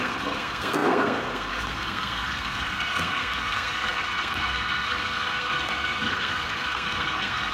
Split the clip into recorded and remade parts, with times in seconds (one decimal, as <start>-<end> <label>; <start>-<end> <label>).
0.0-7.5 remade